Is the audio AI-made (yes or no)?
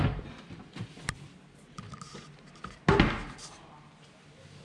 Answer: no